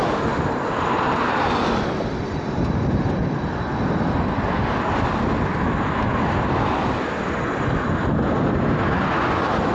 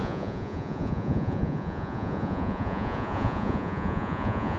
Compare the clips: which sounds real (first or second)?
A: first